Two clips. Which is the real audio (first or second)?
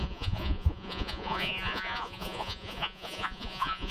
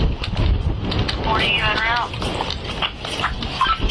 second